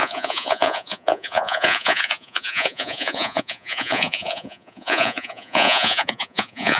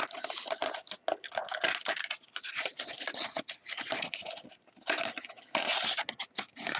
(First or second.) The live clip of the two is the second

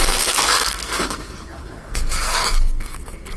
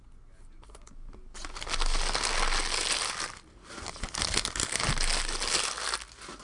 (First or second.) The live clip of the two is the second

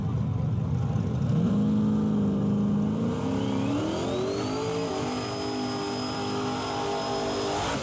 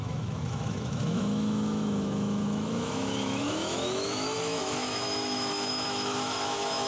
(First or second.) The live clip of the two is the first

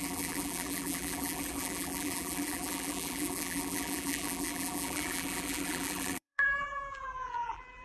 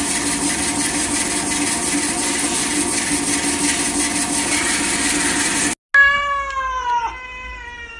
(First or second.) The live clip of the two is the second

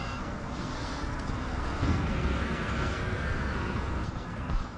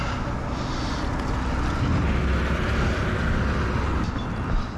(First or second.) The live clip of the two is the second